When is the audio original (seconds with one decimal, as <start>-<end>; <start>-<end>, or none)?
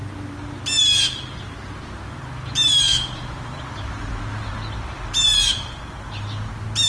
0.0-2.9; 3.6-4.0; 4.5-6.9